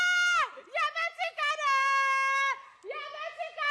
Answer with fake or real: real